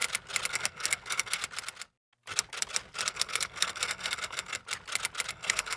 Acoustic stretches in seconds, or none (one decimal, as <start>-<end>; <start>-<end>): 0.0-0.5; 1.4-3.1; 4.6-5.3